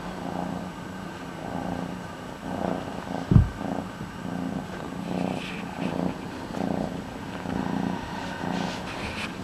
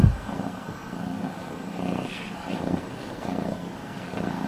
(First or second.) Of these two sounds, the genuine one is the first